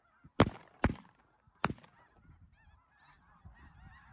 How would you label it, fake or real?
real